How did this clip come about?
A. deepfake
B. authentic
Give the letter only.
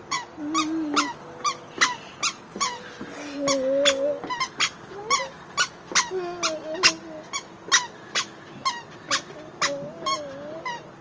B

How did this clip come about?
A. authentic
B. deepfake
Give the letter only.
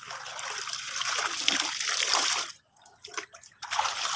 A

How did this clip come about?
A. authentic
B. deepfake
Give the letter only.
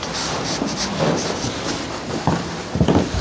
A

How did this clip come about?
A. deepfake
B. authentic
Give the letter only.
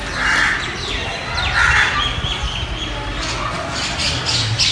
B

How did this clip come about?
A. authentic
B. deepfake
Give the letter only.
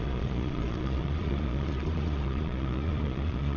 B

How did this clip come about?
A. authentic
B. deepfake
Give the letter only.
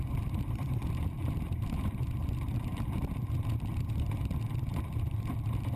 B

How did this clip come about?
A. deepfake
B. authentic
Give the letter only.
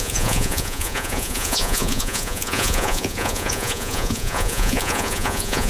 A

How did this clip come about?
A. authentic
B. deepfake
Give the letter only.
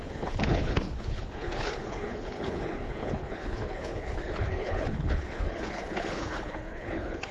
B